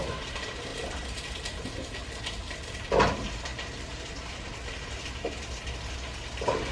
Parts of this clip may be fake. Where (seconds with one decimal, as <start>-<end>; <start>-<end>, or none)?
none